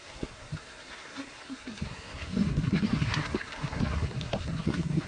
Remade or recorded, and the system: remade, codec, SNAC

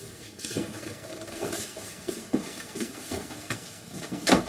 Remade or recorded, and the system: remade, codec, SNAC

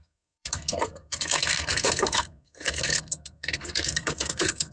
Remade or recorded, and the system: remade, codec, SNAC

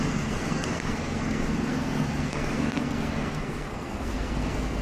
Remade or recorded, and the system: remade, codec, SNAC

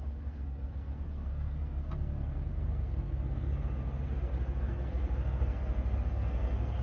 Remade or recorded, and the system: remade, codec, SNAC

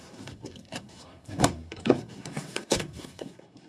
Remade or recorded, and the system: remade, codec, SNAC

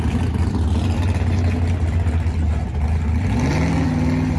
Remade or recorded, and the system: recorded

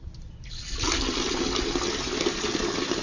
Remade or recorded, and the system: recorded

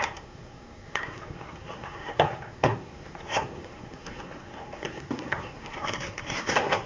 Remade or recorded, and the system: remade, codec, SNAC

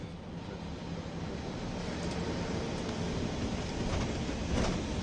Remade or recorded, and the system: recorded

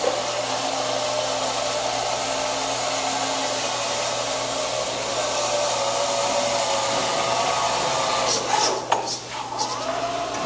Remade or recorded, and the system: recorded